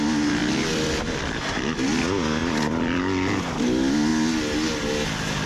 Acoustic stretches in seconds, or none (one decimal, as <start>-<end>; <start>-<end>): 0.0-0.4; 1.6-2.4; 3.0-5.5